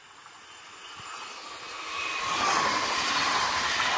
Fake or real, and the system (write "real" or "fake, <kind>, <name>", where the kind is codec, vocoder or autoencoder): real